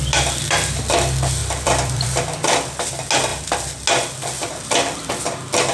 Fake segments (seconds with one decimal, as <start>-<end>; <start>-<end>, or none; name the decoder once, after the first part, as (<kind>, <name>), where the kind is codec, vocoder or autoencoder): 1.4-2.9 (vocoder, BigVGAN v2); 4.4-5.1